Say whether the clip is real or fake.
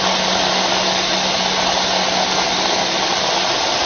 fake